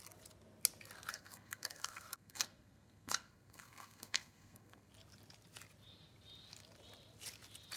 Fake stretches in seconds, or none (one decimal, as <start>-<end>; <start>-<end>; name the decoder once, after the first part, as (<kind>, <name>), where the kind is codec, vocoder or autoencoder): 1.1-4.9 (codec, SNAC)